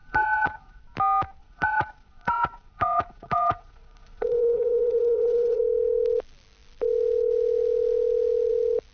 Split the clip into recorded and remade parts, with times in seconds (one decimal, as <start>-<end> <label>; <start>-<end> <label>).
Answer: 0.0-0.8 remade; 0.8-1.4 recorded; 1.4-5.6 remade; 5.6-8.9 recorded